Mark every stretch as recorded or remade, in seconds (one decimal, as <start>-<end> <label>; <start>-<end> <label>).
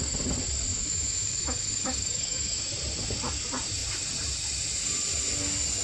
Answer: 0.0-0.7 recorded; 0.7-2.7 remade; 2.7-5.8 recorded